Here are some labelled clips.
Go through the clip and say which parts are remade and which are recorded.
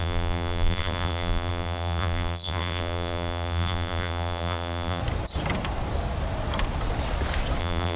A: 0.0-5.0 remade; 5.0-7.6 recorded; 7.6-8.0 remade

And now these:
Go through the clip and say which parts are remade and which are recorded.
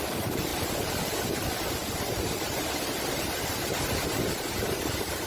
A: 0.0-0.5 recorded; 0.5-1.3 remade; 1.3-5.3 recorded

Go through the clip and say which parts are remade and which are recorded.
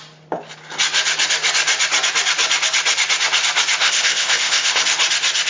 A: 0.0-3.8 recorded; 3.8-4.8 remade; 4.8-5.5 recorded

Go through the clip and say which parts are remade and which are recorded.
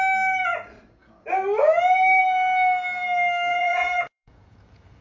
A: 0.0-3.5 recorded; 3.5-5.0 remade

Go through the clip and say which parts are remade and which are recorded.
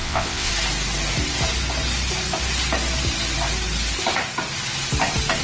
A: 0.0-0.5 remade; 0.5-5.4 recorded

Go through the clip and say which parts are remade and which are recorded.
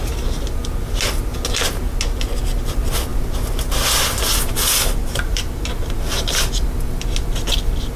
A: 0.0-5.0 recorded; 5.0-5.6 remade; 5.6-8.0 recorded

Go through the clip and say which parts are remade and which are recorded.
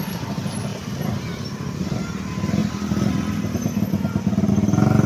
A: 0.0-5.1 recorded